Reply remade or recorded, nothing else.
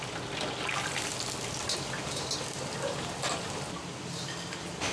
recorded